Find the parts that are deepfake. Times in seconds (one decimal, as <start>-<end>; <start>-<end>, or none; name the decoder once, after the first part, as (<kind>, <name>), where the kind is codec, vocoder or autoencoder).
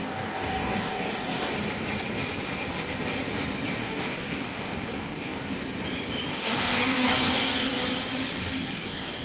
0.0-1.5 (codec, DAC); 3.8-5.5; 6.3-7.8; 8.4-9.2